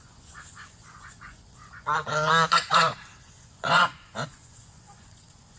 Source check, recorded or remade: remade